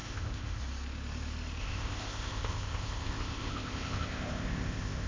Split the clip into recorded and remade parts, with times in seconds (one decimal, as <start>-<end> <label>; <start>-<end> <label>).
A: 0.0-0.6 remade; 0.6-1.6 recorded; 1.6-5.1 remade